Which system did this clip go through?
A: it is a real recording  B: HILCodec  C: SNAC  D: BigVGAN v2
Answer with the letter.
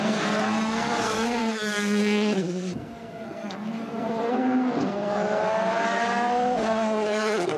C